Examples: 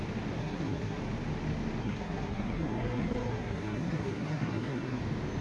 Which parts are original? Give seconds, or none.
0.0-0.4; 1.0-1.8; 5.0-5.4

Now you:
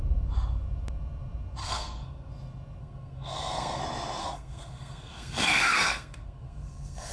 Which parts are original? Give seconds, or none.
0.0-1.6; 2.3-2.8; 3.8-4.2

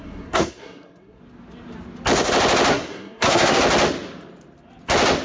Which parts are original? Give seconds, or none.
1.2-2.7; 3.6-5.2

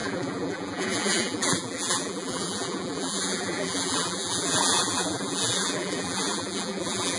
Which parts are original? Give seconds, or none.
none

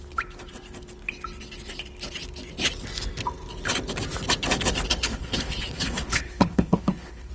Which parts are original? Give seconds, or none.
0.0-5.1

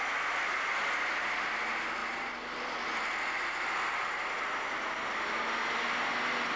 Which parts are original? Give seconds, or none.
0.0-6.6

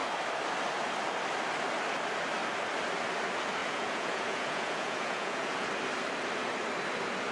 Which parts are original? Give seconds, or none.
0.0-3.6; 5.7-7.3

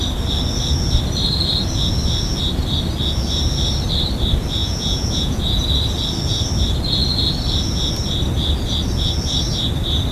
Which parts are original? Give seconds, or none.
0.0-4.6; 5.7-10.1